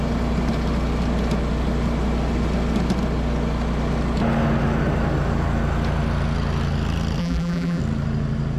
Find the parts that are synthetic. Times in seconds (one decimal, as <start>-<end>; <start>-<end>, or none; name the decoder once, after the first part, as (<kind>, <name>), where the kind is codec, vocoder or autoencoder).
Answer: 7.2-7.8 (vocoder, BigVGAN v2)

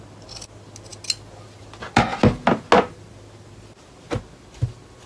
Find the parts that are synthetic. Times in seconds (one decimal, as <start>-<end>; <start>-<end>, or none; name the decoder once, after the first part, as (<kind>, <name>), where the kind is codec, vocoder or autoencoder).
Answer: none